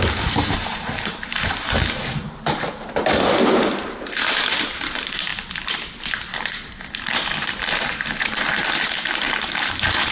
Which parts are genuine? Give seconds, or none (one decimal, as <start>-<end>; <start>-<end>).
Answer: 5.3-7.7